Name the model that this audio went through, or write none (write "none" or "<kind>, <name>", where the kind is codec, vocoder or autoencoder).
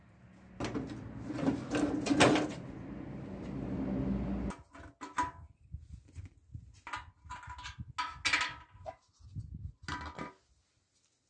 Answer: none